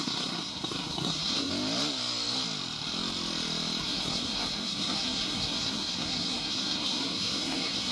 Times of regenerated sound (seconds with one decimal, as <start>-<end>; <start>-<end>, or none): 0.0-1.5; 3.8-7.9